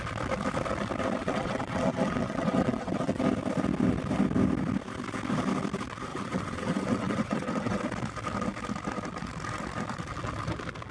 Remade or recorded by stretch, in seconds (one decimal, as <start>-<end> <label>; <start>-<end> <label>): 0.0-1.2 recorded; 1.2-3.2 remade; 3.2-6.1 recorded; 6.1-7.8 remade; 7.8-10.9 recorded